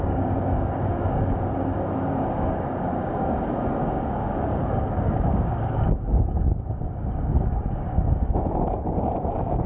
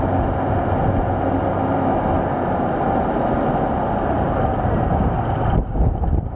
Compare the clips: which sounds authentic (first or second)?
second